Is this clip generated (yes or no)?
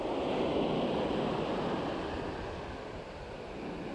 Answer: no